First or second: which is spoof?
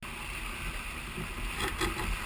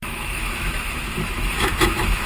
second